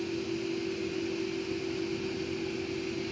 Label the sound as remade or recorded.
recorded